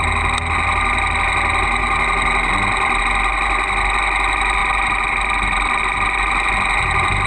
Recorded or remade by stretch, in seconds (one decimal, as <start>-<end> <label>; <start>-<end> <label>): 0.0-7.3 recorded